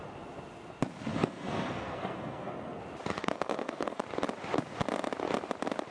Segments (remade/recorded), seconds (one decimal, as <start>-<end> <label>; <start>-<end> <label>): 0.0-1.1 recorded; 1.1-2.8 remade; 2.8-3.2 recorded; 3.2-4.0 remade; 4.0-5.9 recorded